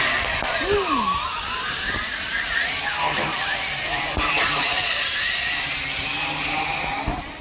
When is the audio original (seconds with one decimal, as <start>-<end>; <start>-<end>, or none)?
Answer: 0.0-2.1; 2.7-7.4